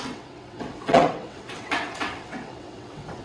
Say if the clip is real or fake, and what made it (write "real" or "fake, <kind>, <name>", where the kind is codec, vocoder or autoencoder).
fake, vocoder, WaveNeXt